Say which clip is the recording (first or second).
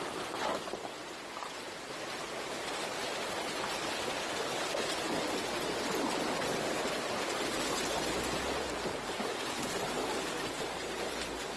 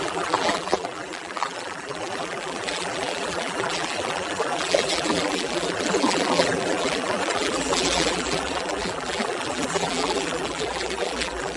first